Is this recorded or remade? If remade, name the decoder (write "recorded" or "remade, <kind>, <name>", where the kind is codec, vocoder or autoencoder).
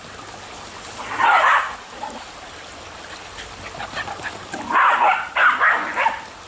recorded